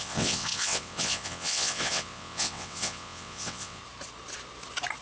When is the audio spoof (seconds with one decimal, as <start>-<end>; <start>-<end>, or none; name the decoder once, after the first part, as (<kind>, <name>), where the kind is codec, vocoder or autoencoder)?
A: 0.0-3.8 (vocoder, WaveNeXt)